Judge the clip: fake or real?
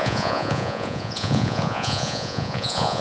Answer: fake